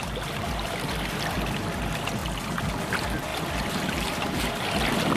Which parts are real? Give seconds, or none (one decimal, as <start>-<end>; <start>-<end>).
0.0-5.2